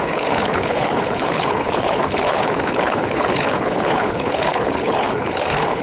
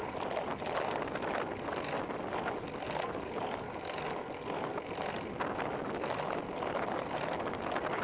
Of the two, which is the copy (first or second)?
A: first